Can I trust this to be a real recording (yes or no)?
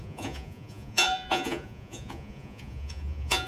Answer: no